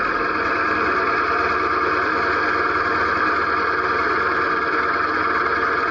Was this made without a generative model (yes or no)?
yes